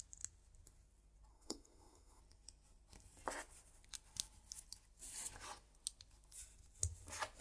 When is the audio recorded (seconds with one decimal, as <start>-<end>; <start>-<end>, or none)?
0.0-1.3; 2.2-7.4